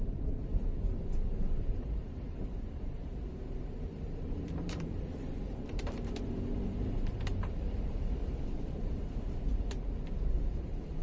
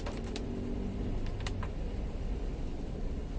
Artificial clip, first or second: first